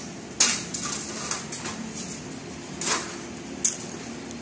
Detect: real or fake real